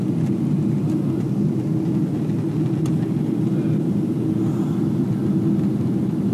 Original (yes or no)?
yes